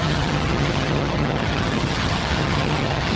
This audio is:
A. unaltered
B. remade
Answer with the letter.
B